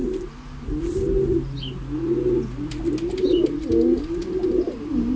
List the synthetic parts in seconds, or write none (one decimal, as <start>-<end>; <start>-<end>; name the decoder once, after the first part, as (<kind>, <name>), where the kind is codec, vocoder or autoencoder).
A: none